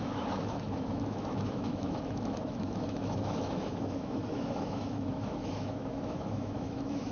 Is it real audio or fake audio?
fake